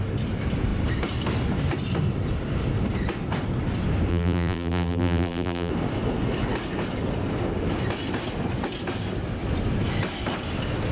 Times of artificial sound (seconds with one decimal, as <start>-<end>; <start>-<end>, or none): 4.1-5.7